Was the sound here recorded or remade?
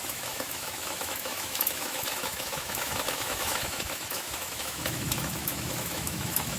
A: remade